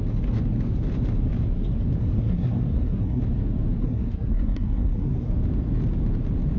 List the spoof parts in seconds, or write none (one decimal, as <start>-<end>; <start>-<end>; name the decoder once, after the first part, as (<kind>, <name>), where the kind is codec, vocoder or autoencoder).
2.0-3.2 (codec, SNAC); 3.8-5.3